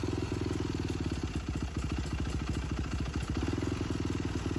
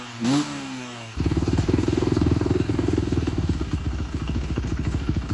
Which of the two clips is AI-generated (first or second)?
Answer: second